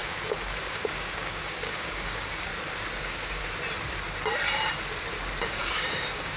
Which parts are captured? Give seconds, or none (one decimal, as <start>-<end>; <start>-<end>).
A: 2.5-3.0; 3.4-5.4